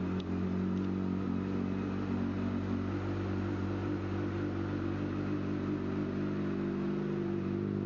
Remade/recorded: recorded